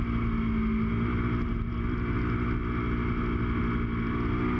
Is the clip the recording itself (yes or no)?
yes